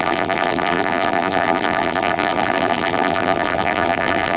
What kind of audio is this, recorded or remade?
remade